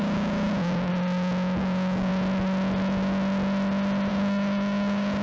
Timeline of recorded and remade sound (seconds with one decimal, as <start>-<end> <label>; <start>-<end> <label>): 0.0-0.9 remade; 0.9-1.6 recorded; 1.6-2.1 remade; 2.1-4.1 recorded; 4.1-5.2 remade